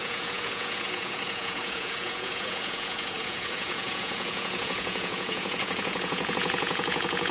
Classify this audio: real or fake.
fake